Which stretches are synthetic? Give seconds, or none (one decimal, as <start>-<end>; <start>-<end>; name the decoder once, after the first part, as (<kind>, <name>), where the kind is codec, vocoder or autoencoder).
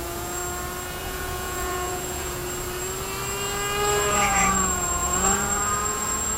0.0-0.4 (vocoder, Vocos); 1.0-2.4; 4.1-6.4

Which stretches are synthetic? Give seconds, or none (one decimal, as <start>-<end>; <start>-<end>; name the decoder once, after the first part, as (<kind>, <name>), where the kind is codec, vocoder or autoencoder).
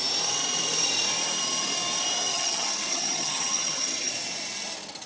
2.3-4.1 (vocoder, HiFi-GAN)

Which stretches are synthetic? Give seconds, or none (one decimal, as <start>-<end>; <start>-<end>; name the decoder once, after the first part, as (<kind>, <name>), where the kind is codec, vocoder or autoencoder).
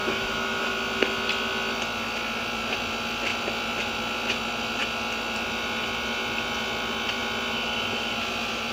0.0-0.7 (autoencoder, DAC-VAE)